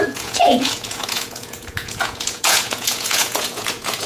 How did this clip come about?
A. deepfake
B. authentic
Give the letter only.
A